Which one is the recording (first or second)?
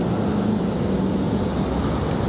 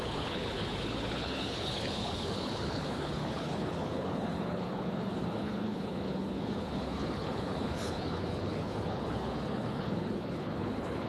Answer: first